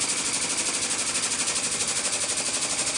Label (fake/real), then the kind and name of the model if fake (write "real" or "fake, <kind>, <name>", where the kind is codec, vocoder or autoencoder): real